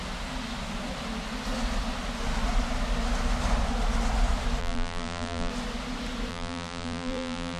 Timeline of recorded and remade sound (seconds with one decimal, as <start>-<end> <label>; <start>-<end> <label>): 0.0-4.6 recorded; 4.6-5.5 remade; 5.5-6.3 recorded; 6.3-7.6 remade